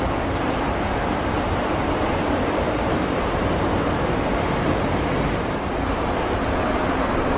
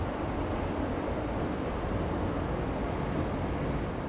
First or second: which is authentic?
second